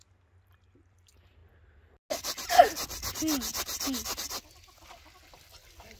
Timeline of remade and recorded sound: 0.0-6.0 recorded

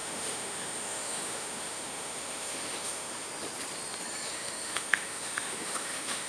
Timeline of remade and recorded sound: 0.0-3.3 remade; 3.3-4.3 recorded; 4.3-6.3 remade